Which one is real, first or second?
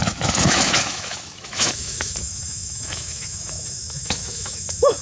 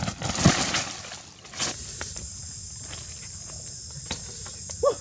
second